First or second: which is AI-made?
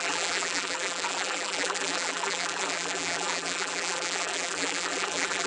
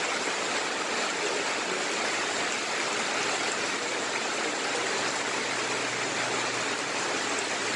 first